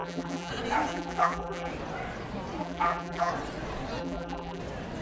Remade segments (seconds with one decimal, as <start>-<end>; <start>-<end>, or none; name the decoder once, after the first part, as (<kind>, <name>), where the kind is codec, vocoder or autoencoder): 0.0-0.5 (vocoder, BigVGAN v2); 0.9-1.7; 2.6-3.3; 4.0-4.6